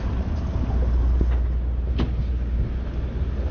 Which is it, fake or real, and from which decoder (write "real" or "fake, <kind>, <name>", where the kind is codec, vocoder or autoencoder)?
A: real